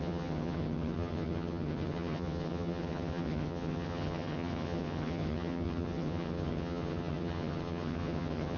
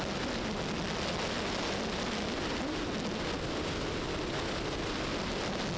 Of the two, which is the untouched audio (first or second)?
second